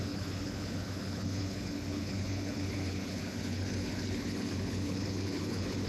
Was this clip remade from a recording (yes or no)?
yes